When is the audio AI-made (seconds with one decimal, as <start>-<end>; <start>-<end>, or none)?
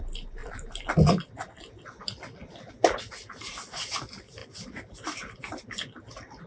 0.4-0.9